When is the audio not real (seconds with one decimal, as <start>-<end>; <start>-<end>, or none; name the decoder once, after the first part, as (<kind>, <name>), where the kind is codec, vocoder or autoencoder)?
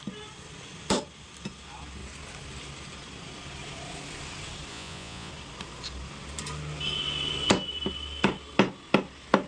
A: 4.7-5.3 (vocoder, Vocos)